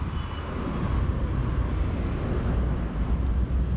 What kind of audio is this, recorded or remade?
recorded